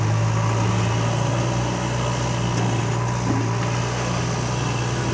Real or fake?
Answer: real